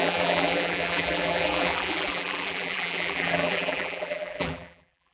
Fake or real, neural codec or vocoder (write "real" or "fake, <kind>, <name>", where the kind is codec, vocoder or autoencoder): fake, vocoder, BigVGAN v2